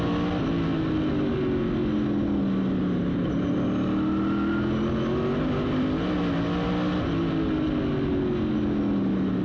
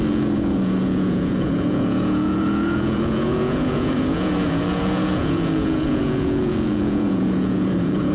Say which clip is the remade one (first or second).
second